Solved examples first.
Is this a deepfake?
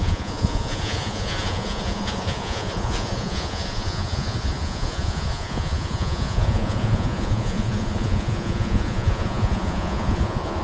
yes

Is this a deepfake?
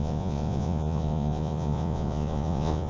yes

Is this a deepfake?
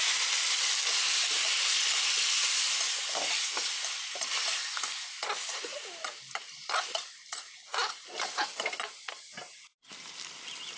no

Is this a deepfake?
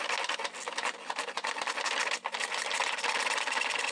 no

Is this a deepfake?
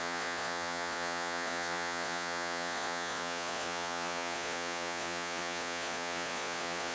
yes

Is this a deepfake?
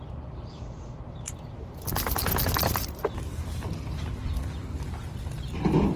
no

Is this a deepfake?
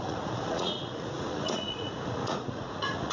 yes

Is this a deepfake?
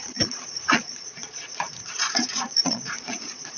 yes